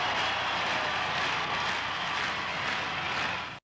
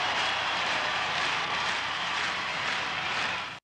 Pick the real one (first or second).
first